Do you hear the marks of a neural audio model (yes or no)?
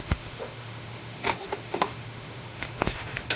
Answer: yes